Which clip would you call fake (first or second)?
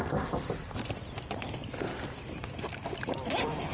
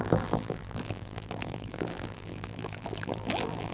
second